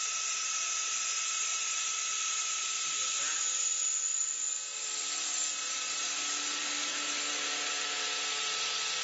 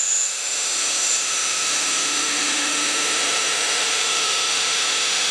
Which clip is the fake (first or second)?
second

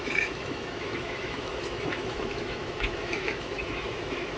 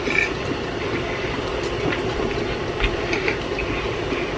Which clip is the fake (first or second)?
first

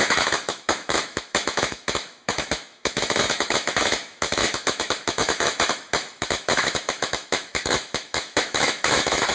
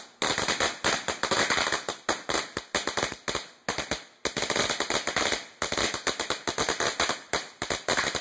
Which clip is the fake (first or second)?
first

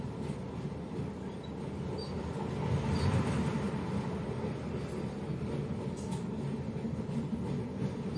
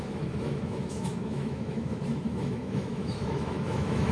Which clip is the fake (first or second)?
second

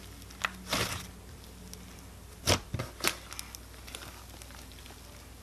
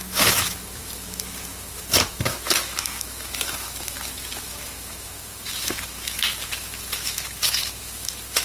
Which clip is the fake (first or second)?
second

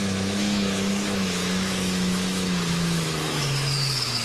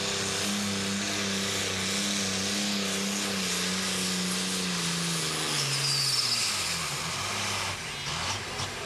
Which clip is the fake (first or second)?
first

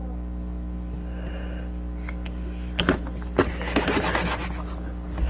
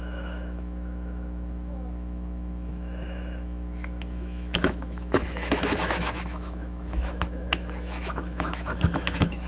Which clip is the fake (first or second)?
second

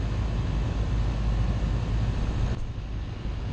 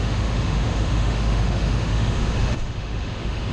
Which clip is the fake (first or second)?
second